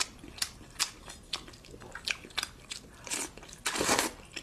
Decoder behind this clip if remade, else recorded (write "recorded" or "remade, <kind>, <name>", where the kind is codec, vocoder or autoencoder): recorded